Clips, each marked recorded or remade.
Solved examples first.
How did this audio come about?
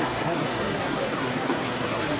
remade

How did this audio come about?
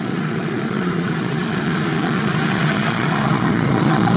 remade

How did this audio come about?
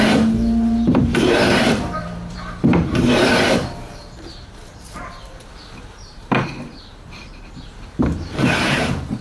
remade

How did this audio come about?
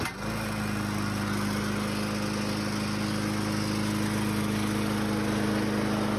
recorded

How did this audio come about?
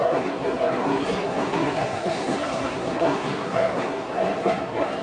remade